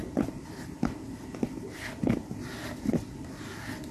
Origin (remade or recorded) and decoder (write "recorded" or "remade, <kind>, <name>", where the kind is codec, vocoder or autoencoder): recorded